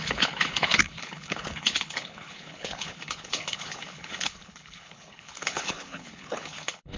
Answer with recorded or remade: remade